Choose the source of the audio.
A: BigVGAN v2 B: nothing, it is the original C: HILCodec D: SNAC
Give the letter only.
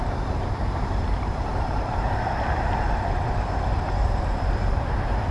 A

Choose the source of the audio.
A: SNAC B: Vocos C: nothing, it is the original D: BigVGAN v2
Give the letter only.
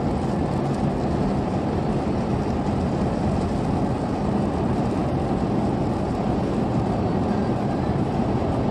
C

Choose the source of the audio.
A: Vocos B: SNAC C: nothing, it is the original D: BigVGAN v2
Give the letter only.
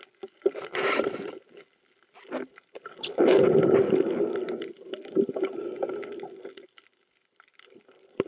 D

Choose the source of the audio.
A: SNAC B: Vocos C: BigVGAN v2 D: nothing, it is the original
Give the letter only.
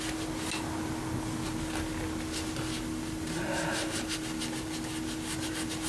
D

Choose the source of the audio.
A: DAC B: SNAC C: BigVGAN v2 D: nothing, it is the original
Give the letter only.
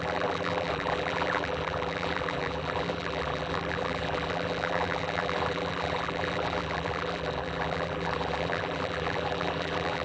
C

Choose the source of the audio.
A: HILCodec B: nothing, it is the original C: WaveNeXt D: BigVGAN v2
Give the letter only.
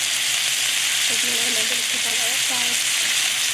B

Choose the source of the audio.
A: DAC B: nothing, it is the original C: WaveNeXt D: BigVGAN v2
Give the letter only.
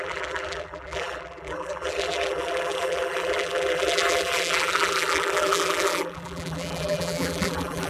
D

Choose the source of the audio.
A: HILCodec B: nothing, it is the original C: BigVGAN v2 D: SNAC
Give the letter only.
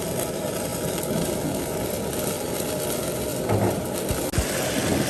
B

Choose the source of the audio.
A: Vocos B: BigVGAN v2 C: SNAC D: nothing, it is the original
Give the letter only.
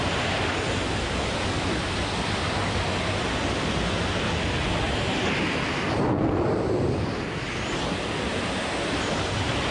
D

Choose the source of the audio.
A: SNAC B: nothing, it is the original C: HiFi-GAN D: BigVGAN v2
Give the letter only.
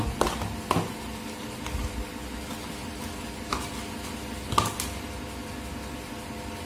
B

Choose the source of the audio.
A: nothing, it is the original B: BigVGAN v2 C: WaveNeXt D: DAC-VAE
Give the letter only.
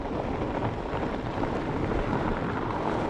B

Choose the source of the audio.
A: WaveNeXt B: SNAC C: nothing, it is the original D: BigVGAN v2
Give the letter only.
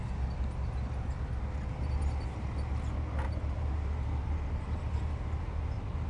C